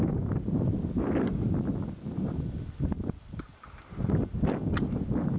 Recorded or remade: recorded